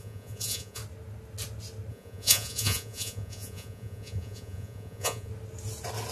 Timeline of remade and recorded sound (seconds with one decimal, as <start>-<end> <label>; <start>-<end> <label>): 0.0-0.8 remade; 0.8-1.9 recorded; 1.9-5.3 remade; 5.3-6.1 recorded